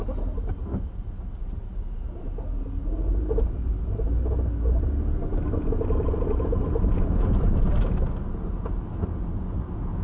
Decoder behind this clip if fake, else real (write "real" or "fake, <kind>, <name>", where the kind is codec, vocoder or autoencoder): real